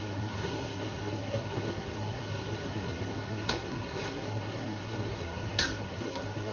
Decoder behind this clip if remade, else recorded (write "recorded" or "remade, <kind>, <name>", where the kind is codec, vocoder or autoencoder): remade, codec, SNAC